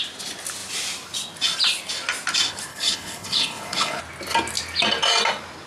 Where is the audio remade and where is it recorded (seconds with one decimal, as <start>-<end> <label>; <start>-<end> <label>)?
0.0-2.7 recorded; 2.7-4.0 remade; 4.0-5.7 recorded